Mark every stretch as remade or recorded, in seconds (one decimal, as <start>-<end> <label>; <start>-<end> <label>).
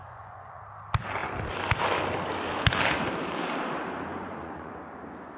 0.0-0.6 remade; 0.6-4.1 recorded; 4.1-4.8 remade; 4.8-5.4 recorded